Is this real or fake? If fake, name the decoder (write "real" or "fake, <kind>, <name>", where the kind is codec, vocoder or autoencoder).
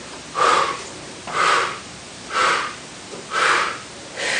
real